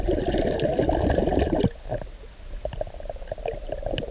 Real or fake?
real